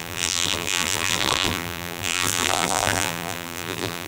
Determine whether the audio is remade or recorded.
remade